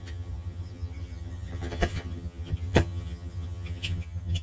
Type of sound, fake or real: fake